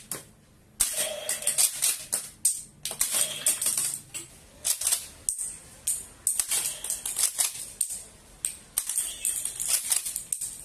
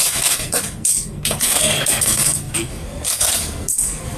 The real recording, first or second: first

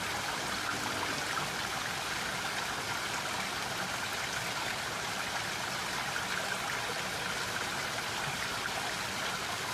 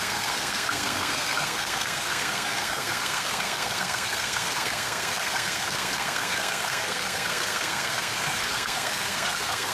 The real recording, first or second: first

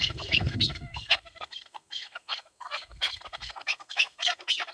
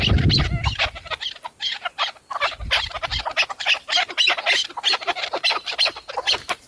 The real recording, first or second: second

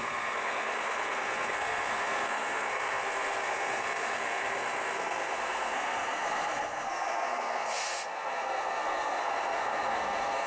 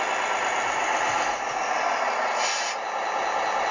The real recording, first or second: second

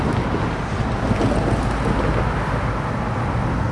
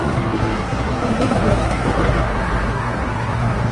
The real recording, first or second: first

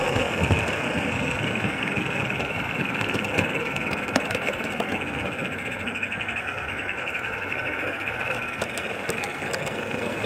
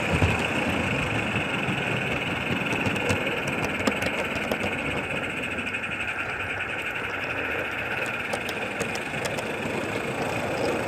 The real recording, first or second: second